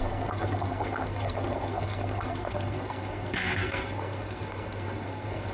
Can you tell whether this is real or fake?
fake